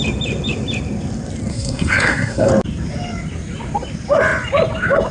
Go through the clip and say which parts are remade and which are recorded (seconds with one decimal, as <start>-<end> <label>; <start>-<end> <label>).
0.0-1.5 recorded; 1.5-2.5 remade; 2.5-5.1 recorded